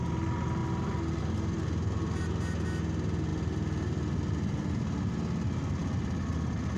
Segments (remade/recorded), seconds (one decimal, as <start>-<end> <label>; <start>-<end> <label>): 0.0-3.3 recorded; 3.3-4.8 remade; 4.8-5.8 recorded; 5.8-6.8 remade